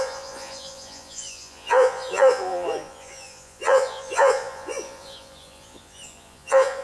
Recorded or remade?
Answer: remade